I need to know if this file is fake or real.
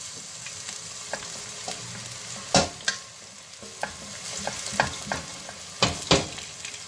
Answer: real